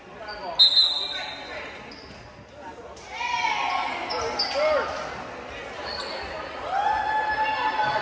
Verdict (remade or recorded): recorded